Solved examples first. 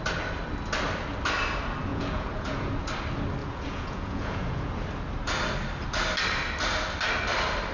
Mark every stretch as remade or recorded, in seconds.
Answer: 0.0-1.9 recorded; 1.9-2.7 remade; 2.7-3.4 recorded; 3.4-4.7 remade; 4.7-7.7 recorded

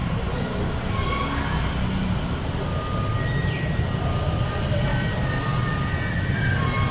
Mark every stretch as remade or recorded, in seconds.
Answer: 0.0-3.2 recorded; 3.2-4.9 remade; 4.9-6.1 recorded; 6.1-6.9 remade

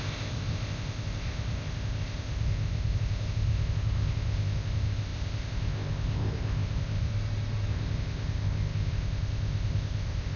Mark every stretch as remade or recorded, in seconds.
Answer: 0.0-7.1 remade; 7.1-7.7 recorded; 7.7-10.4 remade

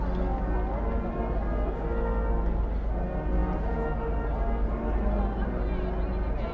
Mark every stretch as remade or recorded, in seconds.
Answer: 0.0-6.5 recorded

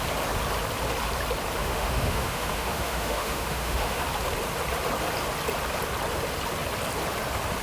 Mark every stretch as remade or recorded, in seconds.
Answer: 0.0-1.6 recorded; 1.6-4.0 remade; 4.0-7.6 recorded

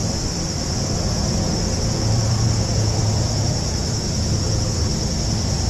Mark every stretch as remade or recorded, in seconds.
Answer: 0.0-0.6 recorded; 0.6-4.9 remade; 4.9-5.7 recorded

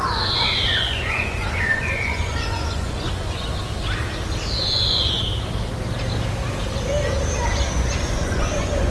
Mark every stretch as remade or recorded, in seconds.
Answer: 0.0-3.5 remade; 3.5-4.6 recorded; 4.6-5.3 remade; 5.3-7.6 recorded; 7.6-8.9 remade